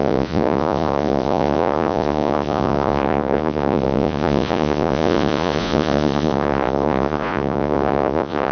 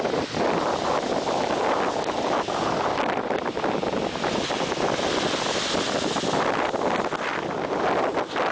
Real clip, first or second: second